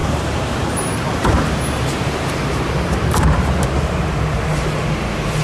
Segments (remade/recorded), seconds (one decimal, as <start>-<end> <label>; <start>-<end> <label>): 0.0-3.2 remade; 3.2-5.4 recorded